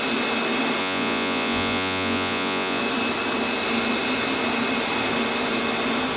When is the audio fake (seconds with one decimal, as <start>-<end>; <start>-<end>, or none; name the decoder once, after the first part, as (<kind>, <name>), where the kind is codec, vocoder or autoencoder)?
0.8-2.8 (vocoder, Vocos)